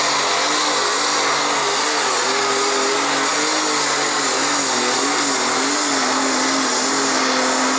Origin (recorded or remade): recorded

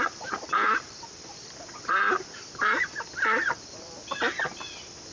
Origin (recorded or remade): recorded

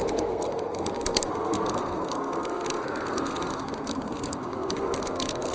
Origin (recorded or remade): remade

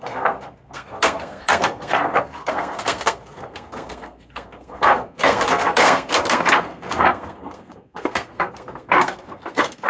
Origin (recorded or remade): remade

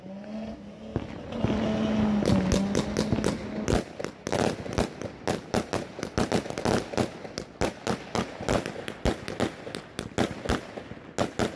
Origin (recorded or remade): recorded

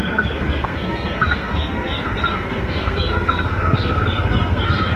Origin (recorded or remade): remade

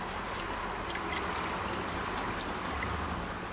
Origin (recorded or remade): recorded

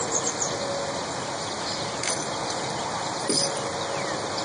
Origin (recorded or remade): recorded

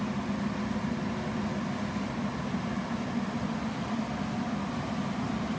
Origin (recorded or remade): recorded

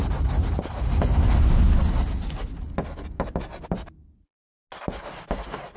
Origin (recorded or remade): recorded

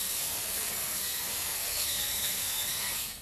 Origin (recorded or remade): remade